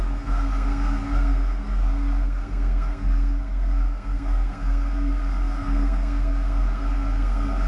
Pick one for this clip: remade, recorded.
remade